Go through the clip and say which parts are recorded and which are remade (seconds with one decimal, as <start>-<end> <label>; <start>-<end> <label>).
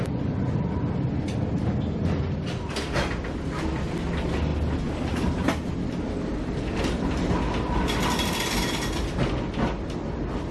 0.0-10.5 recorded